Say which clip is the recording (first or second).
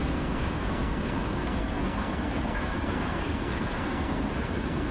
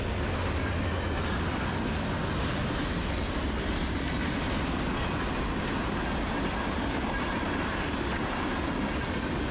second